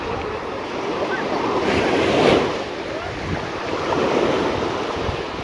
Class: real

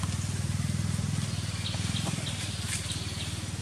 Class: real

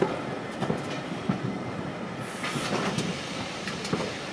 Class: real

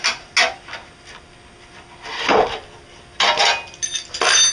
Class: real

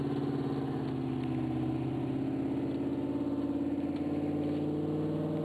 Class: real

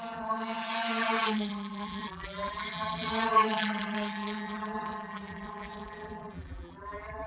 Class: fake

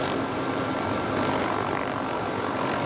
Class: real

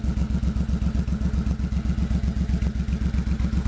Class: real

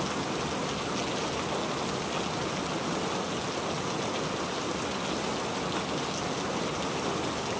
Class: real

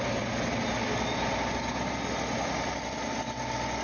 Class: real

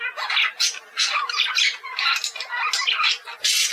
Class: real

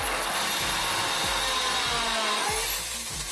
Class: real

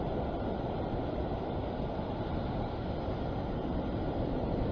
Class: real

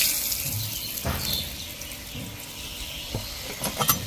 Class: real